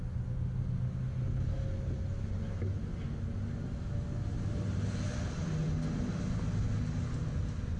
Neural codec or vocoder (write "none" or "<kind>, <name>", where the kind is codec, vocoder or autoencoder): none